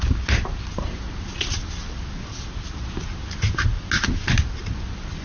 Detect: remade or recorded recorded